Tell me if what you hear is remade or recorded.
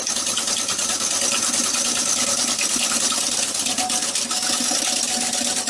recorded